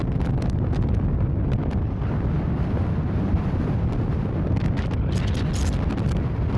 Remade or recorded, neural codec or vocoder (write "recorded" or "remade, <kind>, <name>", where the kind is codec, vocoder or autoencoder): recorded